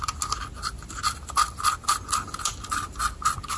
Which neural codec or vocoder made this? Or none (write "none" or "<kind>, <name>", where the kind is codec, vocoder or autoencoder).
none